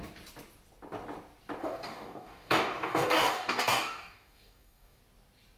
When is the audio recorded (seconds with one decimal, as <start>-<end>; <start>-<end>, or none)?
0.0-1.6; 5.0-5.6